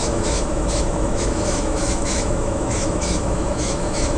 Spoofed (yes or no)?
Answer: yes